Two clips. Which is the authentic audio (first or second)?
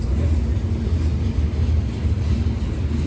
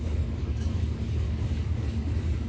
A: first